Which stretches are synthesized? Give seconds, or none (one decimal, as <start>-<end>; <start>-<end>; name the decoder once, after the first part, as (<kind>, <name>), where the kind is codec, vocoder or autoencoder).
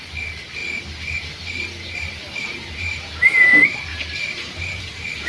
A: 0.0-5.3 (vocoder, BigVGAN v2)